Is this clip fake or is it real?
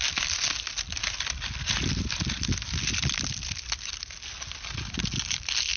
real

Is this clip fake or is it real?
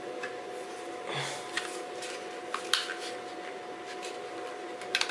real